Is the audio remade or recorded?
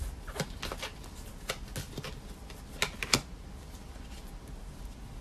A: recorded